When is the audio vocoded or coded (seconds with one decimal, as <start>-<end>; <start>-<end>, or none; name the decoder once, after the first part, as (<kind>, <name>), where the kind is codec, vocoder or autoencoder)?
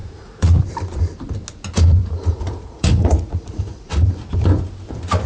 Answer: 0.0-0.6 (vocoder, Vocos); 2.0-3.9